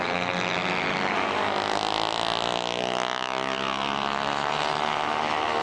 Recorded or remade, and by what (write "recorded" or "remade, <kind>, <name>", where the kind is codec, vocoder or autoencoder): recorded